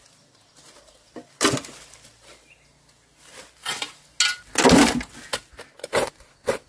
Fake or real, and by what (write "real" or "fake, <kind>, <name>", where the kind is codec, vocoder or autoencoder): real